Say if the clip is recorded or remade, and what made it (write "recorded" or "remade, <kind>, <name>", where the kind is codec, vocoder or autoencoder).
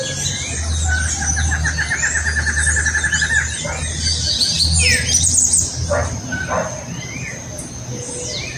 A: recorded